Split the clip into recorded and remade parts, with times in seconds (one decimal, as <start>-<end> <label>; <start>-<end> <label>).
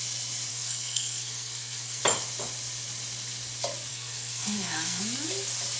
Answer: 0.0-0.5 recorded; 0.5-2.0 remade; 2.0-3.9 recorded; 3.9-5.0 remade; 5.0-5.8 recorded